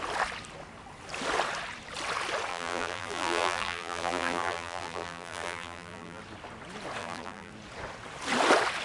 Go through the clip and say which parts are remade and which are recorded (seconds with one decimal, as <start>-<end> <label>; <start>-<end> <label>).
0.0-2.5 recorded; 2.5-6.2 remade; 6.2-7.0 recorded; 7.0-7.5 remade; 7.5-8.8 recorded